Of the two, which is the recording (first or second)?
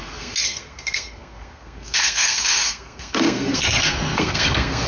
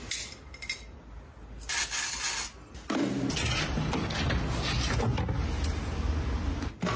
second